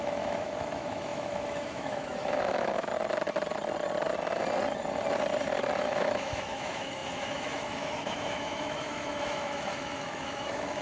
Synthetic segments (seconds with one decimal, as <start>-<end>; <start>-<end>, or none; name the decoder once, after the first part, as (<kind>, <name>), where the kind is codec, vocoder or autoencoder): 0.0-2.9 (autoencoder, DAC-VAE); 5.8-10.8